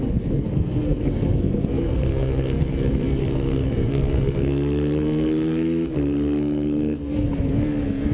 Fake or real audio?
fake